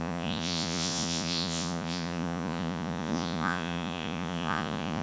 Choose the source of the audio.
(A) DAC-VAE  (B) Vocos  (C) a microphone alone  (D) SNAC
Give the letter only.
B